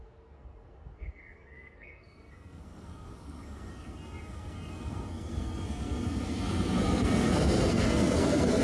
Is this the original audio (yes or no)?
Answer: no